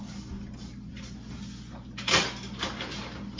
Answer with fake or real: real